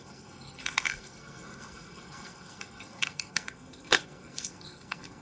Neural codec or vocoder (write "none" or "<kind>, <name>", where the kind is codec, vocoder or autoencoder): codec, SNAC